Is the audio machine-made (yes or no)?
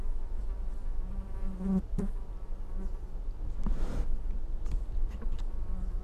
no